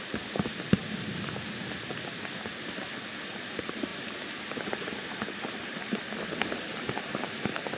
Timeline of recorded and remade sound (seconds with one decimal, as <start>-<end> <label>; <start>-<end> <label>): 0.0-7.8 remade